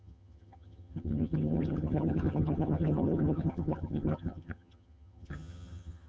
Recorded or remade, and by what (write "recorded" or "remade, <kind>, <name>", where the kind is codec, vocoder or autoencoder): remade, vocoder, HiFi-GAN